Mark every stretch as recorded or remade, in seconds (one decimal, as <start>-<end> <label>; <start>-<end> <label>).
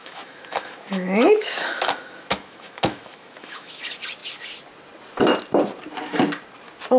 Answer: 0.0-3.8 remade; 3.8-7.0 recorded